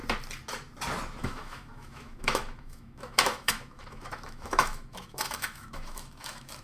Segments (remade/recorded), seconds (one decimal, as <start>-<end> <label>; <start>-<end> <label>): 0.0-1.2 recorded; 1.2-6.6 remade